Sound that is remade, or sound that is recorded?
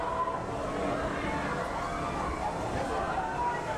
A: recorded